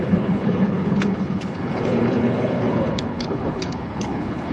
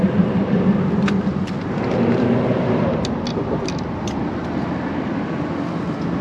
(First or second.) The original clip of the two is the second